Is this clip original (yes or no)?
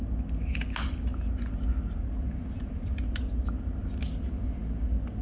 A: yes